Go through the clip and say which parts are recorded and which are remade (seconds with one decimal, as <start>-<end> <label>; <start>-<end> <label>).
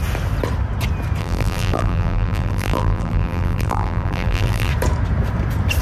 0.0-1.2 recorded; 1.2-4.7 remade; 4.7-5.8 recorded